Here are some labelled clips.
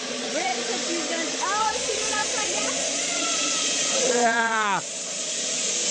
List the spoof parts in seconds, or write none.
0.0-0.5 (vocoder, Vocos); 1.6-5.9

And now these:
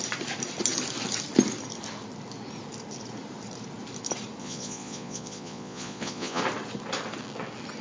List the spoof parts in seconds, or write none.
4.4-6.4 (vocoder, Vocos)

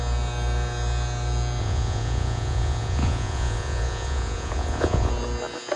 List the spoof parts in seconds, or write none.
1.6-5.1 (vocoder, Vocos)

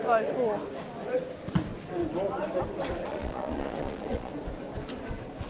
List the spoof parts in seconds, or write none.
3.1-4.3 (vocoder, Vocos)

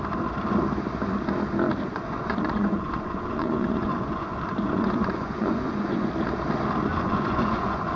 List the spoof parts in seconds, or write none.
1.9-6.1 (vocoder, Vocos); 6.9-8.0

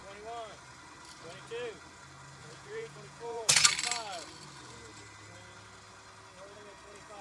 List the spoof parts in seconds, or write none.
2.4-3.7 (vocoder, Vocos)

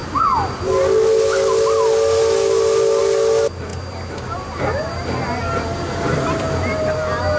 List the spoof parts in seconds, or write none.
none

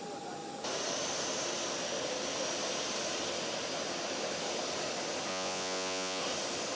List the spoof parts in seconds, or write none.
5.3-6.2 (vocoder, Vocos)